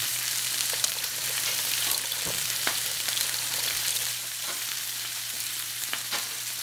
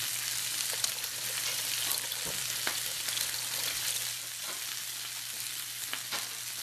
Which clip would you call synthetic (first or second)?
first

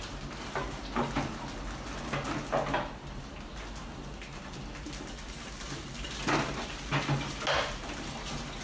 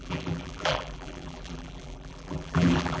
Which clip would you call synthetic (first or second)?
second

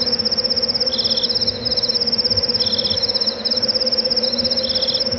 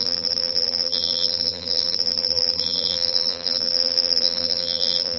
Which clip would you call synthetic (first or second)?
second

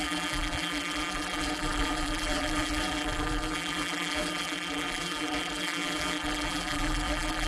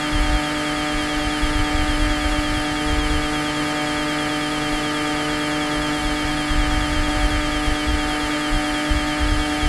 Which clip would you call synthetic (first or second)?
first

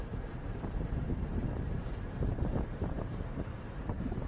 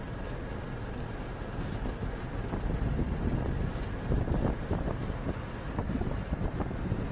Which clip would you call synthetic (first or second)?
first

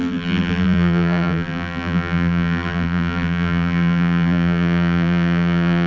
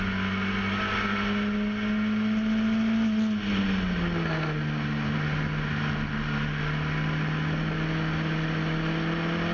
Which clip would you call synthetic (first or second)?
first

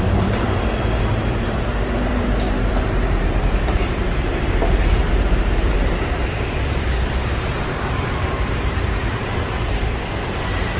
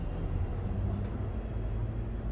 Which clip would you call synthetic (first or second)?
first